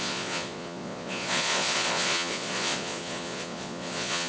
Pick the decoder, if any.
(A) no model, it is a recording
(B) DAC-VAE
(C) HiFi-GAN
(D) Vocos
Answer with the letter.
D